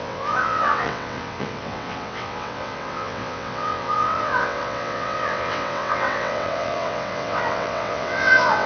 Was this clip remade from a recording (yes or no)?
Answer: yes